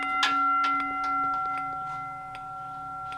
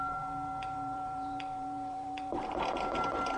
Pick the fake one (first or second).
second